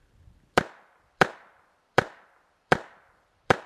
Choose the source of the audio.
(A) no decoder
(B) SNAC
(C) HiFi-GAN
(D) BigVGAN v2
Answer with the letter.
D